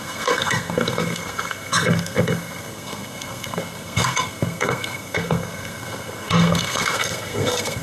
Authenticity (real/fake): fake